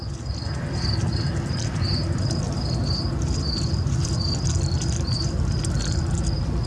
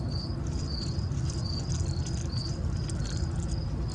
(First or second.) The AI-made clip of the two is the first